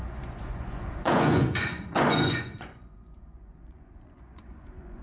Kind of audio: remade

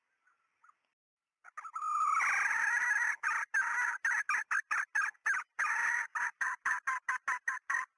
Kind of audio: recorded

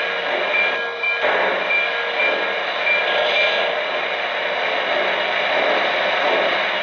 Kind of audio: recorded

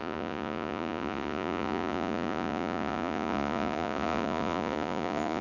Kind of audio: remade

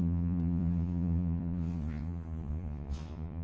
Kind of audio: remade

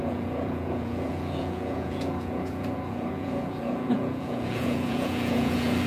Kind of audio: remade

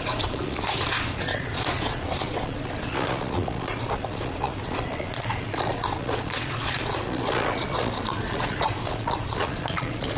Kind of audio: remade